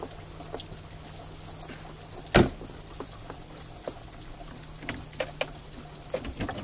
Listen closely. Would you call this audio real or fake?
real